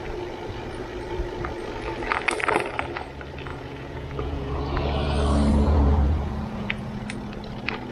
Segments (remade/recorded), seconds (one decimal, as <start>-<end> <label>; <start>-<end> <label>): 0.0-3.5 recorded; 3.5-4.6 remade; 4.6-5.5 recorded; 5.5-7.0 remade; 7.0-7.9 recorded